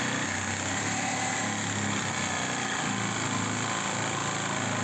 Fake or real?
real